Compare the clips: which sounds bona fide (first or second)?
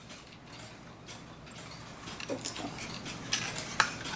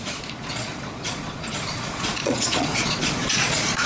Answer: first